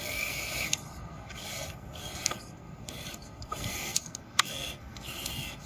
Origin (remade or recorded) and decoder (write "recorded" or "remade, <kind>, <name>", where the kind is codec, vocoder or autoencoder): remade, codec, SNAC